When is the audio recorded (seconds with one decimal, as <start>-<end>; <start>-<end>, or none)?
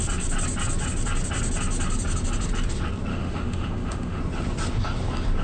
0.0-3.1; 4.2-5.4